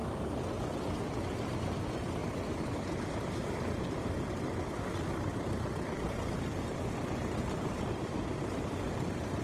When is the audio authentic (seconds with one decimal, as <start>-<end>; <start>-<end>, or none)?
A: 0.0-1.6; 2.2-3.1